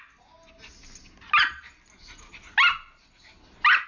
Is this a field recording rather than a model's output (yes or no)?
yes